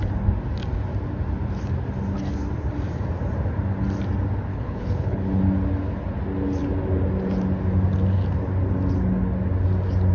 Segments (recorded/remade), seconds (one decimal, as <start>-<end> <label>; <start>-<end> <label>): 0.0-4.5 recorded; 4.5-5.4 remade; 5.4-10.1 recorded